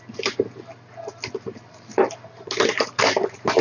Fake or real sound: real